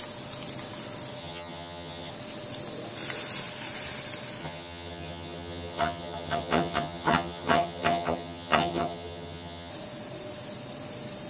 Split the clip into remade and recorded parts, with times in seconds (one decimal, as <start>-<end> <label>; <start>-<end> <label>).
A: 0.0-1.2 recorded; 1.2-2.1 remade; 2.1-4.4 recorded; 4.4-9.7 remade; 9.7-11.3 recorded